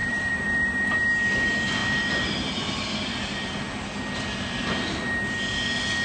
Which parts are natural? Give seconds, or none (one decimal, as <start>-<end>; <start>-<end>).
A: 1.0-1.8; 4.7-6.0